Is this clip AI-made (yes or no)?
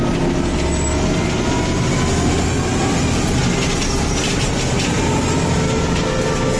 no